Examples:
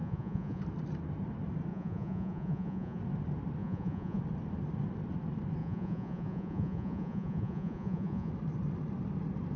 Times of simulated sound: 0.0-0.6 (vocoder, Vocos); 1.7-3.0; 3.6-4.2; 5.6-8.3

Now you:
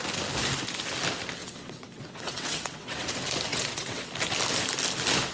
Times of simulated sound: 1.4-3.1 (vocoder, WaveNeXt); 3.5-4.1

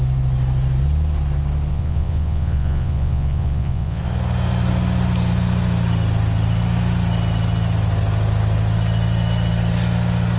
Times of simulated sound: 1.7-4.0 (vocoder, Vocos)